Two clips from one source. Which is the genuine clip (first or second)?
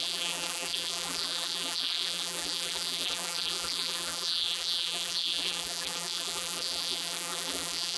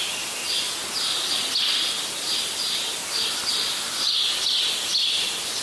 second